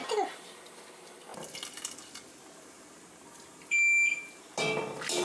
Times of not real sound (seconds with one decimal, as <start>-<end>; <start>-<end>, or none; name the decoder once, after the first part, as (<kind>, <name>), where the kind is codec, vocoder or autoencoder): none